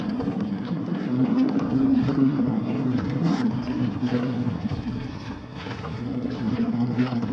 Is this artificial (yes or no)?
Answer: yes